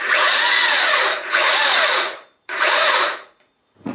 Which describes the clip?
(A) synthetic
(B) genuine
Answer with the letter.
A